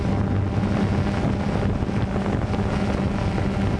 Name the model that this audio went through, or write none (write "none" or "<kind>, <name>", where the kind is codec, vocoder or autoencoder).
none